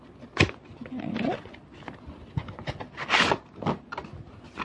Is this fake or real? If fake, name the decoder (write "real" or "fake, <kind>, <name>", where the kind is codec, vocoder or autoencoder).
real